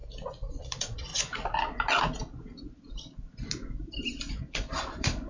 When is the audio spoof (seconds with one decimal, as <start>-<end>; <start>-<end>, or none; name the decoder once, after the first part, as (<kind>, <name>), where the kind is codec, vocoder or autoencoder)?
0.6-1.1 (vocoder, Vocos); 4.3-5.3